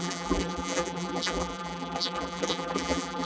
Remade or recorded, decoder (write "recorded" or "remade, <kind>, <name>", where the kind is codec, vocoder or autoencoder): remade, vocoder, BigVGAN v2